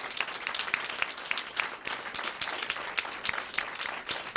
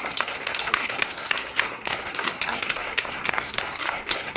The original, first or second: first